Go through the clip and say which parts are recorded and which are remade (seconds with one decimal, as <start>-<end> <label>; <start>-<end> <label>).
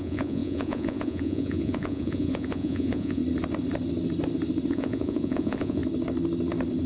0.0-3.2 remade; 3.2-4.7 recorded; 4.7-5.8 remade; 5.8-6.9 recorded